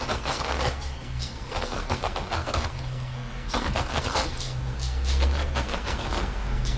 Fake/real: fake